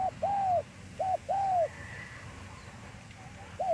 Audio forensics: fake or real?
real